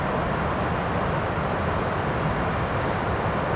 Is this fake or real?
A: real